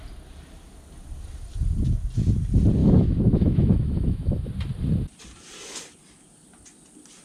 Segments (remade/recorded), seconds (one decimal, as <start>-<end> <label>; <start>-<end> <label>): 0.0-2.8 recorded; 2.8-4.5 remade; 4.5-7.2 recorded